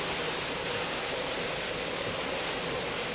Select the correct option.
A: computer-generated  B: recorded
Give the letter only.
B